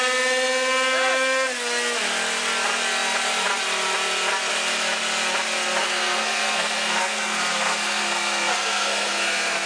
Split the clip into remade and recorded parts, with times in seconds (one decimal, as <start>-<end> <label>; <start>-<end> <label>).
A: 0.0-5.8 recorded; 5.8-9.7 remade